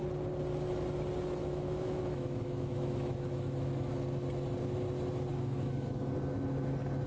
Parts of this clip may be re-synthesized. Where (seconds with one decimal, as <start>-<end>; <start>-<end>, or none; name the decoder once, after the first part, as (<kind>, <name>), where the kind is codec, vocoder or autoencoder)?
1.4-3.9 (autoencoder, DAC-VAE); 5.3-6.1